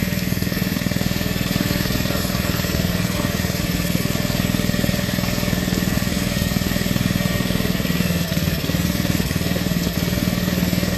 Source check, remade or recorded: remade